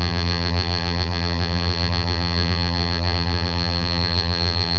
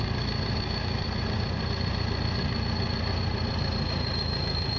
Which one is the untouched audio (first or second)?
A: second